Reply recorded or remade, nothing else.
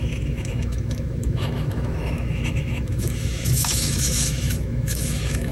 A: remade